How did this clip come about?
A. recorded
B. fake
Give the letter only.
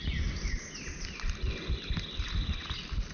A